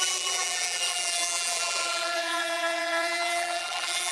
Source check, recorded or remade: remade